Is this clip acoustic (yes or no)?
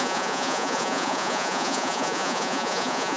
no